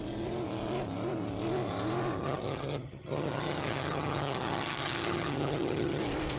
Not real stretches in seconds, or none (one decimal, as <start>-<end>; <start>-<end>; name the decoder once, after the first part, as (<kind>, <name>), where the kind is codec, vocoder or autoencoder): 2.2-6.0 (vocoder, HiFi-GAN)

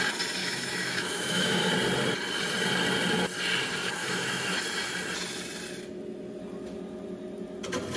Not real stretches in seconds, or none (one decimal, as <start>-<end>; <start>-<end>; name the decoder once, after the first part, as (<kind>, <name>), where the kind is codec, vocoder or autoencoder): 0.4-1.7 (autoencoder, DAC-VAE); 4.0-4.6

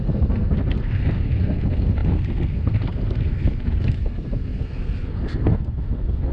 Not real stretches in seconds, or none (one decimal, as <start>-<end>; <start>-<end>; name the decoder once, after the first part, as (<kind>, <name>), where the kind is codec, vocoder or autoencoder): 0.0-6.3 (codec, SNAC)

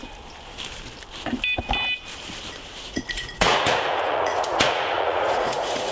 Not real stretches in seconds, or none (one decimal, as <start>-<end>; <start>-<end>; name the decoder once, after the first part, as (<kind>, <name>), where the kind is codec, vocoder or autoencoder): 2.7-5.9 (vocoder, Vocos)